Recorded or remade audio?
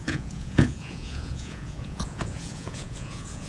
remade